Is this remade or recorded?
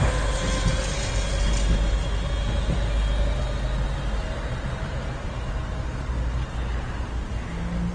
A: recorded